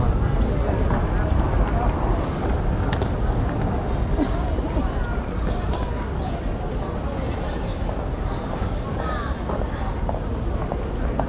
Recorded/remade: recorded